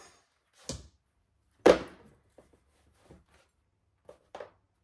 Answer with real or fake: real